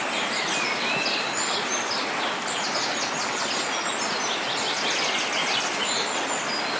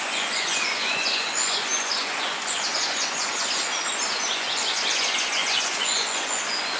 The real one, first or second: first